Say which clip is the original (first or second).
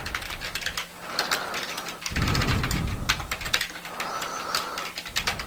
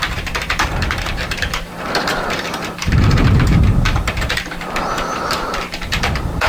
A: first